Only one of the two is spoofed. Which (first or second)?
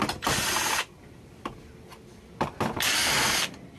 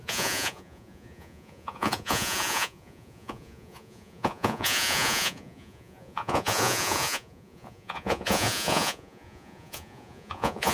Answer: second